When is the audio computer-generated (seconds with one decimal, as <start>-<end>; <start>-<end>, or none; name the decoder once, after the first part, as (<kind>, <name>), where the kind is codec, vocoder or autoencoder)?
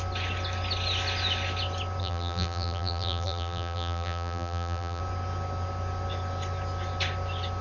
2.0-5.0 (vocoder, BigVGAN v2)